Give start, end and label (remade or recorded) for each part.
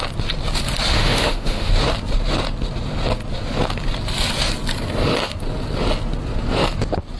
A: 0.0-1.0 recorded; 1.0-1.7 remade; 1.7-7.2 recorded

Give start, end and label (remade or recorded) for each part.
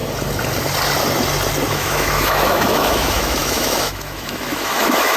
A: 0.0-1.7 recorded; 1.7-5.2 remade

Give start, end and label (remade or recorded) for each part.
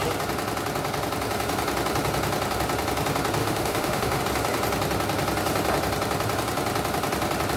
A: 0.0-3.4 recorded; 3.4-4.2 remade; 4.2-7.6 recorded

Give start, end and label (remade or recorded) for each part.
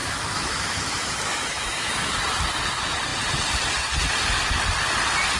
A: 0.0-2.2 remade; 2.2-5.4 recorded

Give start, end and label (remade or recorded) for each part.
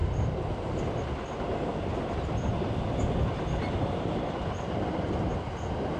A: 0.0-6.0 recorded